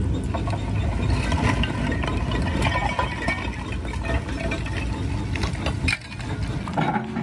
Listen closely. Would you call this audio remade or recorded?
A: recorded